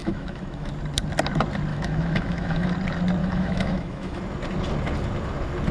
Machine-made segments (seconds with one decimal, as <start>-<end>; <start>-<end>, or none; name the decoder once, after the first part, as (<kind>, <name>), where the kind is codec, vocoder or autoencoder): 0.0-0.7 (autoencoder, DAC-VAE); 1.7-2.7; 3.2-4.2